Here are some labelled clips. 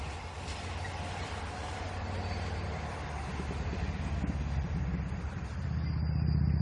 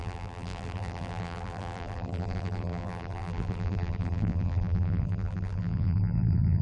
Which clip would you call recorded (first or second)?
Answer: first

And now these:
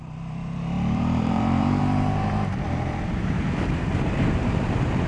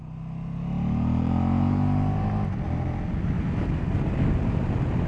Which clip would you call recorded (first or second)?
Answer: second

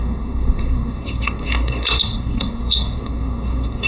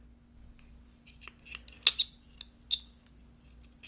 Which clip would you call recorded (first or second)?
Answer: second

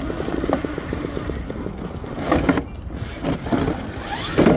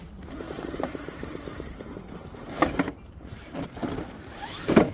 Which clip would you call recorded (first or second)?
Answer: first